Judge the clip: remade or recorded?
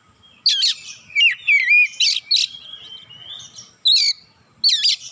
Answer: recorded